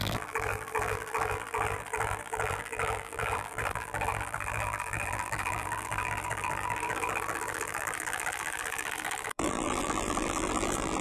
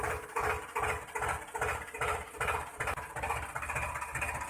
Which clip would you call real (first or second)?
second